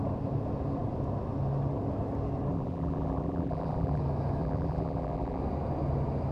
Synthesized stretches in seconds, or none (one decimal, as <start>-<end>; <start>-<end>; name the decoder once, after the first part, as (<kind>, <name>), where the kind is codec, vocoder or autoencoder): 2.5-4.0 (vocoder, BigVGAN v2); 4.4-5.4